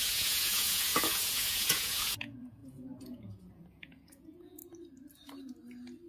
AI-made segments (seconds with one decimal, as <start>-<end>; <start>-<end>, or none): 0.0-4.6